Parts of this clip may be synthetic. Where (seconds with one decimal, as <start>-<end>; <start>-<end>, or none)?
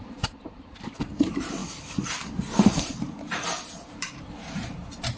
0.0-1.6; 3.1-5.2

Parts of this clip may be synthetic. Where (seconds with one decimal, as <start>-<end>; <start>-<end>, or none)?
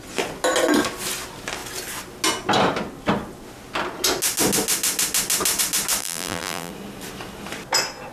6.0-6.7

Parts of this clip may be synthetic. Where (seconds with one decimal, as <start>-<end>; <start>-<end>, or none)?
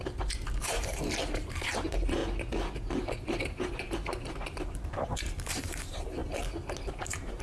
0.0-2.2; 3.4-6.2; 6.9-7.4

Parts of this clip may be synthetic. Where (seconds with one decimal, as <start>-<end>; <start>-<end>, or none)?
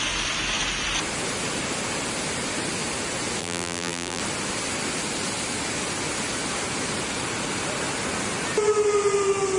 3.4-4.2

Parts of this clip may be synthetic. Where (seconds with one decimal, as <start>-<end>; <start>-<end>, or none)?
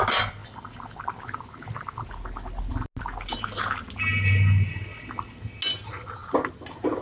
none